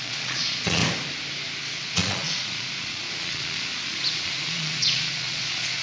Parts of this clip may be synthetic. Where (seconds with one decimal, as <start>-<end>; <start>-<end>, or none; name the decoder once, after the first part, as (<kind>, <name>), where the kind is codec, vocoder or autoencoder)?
0.0-0.8 (vocoder, Vocos); 1.7-5.8